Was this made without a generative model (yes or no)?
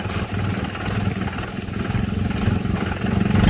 yes